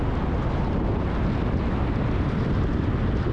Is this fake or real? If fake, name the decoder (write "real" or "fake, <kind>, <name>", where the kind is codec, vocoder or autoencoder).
real